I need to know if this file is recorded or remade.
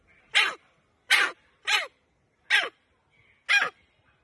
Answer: recorded